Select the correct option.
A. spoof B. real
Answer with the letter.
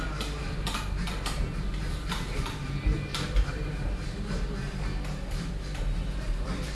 A